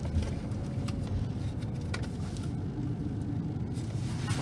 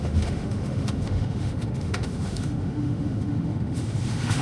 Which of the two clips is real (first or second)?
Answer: first